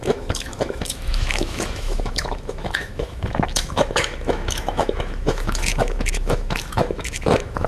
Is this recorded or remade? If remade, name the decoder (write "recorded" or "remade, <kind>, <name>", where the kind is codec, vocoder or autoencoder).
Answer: remade, autoencoder, DAC-VAE